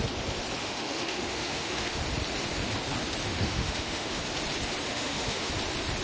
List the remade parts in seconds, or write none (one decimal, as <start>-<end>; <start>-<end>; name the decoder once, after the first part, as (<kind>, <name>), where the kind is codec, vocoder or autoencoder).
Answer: 0.6-2.0 (autoencoder, DAC-VAE); 3.3-4.2; 4.9-5.5